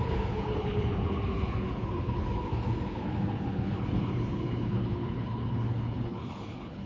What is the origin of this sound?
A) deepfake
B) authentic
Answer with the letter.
A